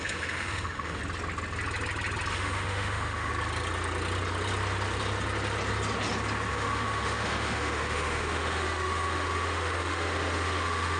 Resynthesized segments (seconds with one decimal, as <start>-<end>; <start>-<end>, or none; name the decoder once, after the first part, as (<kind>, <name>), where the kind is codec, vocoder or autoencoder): 0.0-1.0 (autoencoder, DAC-VAE); 2.3-3.3; 6.5-11.0

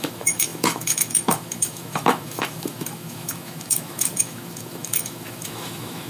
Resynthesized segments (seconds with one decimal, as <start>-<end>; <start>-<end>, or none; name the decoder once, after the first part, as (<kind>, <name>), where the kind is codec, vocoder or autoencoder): 0.0-6.1 (autoencoder, DAC-VAE)

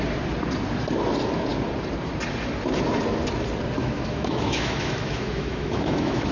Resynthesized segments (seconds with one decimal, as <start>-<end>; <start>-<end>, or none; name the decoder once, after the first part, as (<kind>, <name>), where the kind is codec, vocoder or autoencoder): 3.8-6.3 (autoencoder, DAC-VAE)

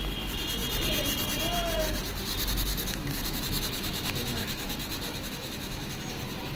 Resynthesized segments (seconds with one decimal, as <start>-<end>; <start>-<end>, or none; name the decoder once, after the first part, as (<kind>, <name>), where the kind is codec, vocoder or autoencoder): 2.7-6.1 (autoencoder, DAC-VAE)